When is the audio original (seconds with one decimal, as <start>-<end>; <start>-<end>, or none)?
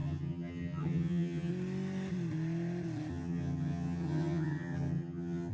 1.5-3.1